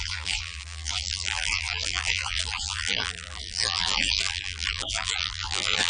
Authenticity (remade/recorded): remade